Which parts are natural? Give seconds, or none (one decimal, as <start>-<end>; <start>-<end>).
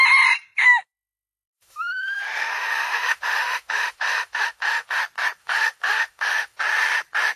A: 0.0-0.6; 5.0-5.4; 6.6-7.4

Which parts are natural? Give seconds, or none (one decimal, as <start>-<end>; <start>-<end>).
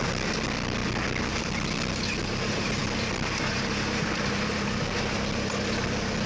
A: 0.0-6.3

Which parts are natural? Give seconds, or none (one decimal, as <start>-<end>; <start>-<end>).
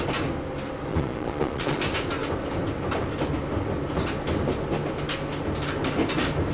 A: 0.0-0.9; 1.8-6.5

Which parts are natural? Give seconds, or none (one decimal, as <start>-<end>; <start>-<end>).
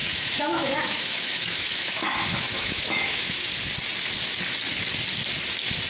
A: 3.5-5.9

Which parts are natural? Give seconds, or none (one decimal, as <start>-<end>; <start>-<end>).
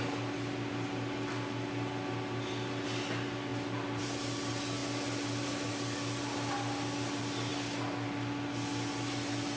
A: 0.0-9.6